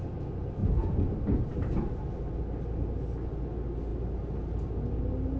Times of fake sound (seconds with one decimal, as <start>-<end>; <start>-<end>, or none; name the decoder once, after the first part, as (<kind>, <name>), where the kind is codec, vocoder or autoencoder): none